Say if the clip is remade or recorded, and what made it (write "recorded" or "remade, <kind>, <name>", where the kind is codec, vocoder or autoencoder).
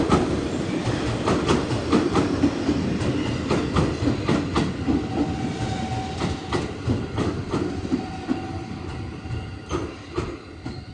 recorded